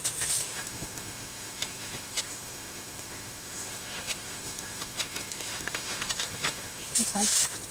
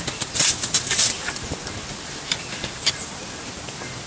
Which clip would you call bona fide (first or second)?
second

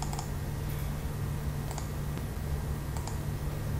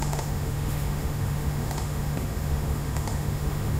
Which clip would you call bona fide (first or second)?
first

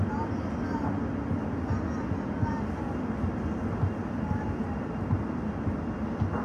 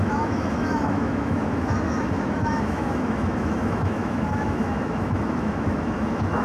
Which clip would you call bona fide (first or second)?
first